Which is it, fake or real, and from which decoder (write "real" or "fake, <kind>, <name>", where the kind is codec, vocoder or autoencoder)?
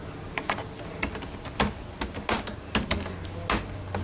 real